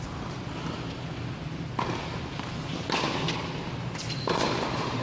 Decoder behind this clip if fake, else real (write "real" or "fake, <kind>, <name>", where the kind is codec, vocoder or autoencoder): real